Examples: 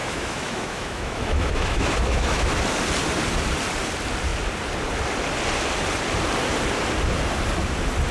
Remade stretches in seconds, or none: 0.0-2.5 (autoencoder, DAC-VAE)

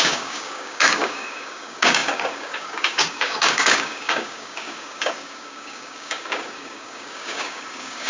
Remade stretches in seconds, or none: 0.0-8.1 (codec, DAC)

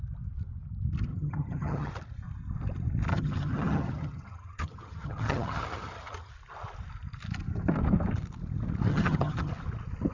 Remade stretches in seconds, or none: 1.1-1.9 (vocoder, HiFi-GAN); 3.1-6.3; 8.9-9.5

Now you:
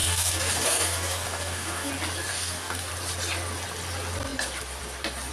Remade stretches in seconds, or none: 0.0-1.9 (codec, DAC); 2.3-2.9

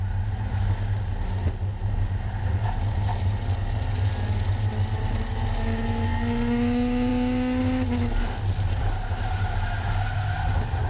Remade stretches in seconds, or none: none

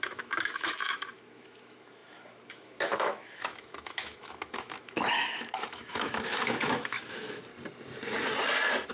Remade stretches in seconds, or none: 0.0-7.5 (autoencoder, DAC-VAE)

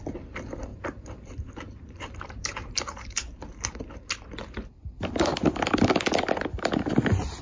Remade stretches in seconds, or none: 0.7-5.1 (vocoder, BigVGAN v2)

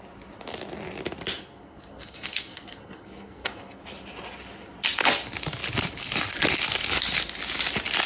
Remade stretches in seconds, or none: 1.4-3.8 (codec, SNAC)